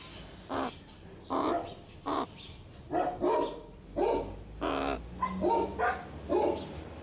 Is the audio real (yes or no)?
yes